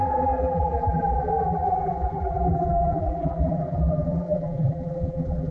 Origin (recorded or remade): remade